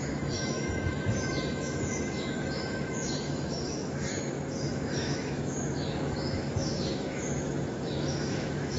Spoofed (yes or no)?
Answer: yes